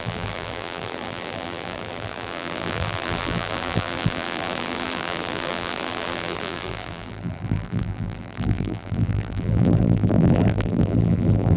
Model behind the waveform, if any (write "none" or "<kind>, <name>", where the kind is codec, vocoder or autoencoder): vocoder, BigVGAN v2